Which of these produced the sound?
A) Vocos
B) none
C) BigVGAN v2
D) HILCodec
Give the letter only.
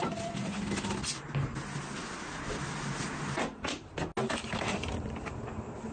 B